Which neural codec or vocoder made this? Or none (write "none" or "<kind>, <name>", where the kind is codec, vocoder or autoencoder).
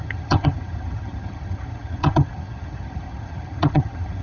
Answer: vocoder, HiFi-GAN